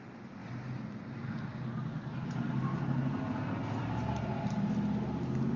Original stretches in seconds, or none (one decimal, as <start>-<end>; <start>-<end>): 0.0-5.6